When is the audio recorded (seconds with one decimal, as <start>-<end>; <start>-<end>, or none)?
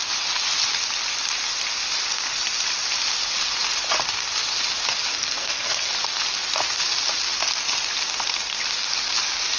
0.0-5.1; 5.9-9.6